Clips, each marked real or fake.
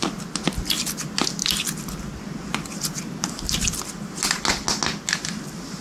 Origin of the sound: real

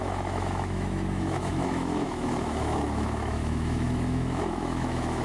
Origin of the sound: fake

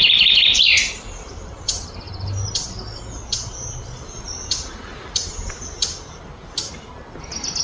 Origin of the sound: real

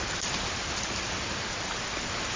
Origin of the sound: real